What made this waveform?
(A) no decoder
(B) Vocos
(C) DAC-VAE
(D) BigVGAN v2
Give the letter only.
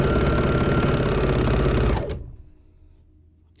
A